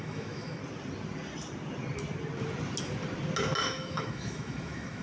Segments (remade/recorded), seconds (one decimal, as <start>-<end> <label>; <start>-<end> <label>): 0.0-0.6 remade; 0.6-3.6 recorded; 3.6-5.0 remade